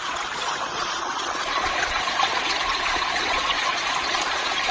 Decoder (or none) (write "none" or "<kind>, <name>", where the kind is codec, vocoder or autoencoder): vocoder, Vocos